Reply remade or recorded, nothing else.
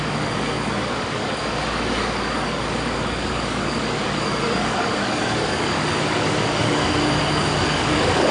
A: remade